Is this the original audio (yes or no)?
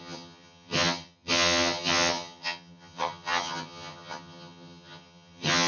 no